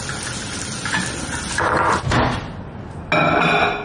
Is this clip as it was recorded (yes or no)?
yes